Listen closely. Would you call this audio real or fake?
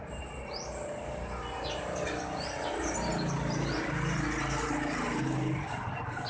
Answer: real